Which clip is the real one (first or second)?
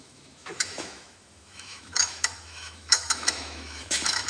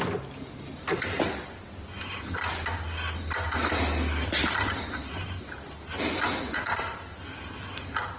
second